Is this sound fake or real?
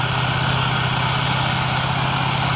real